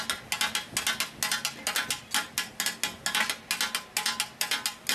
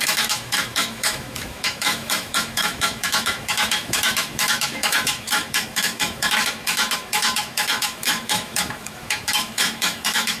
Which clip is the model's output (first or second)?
second